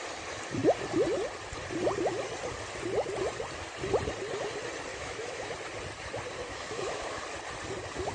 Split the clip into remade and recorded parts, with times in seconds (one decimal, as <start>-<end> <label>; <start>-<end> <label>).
0.0-4.9 recorded; 4.9-5.5 remade; 5.5-6.4 recorded; 6.4-7.2 remade; 7.2-8.1 recorded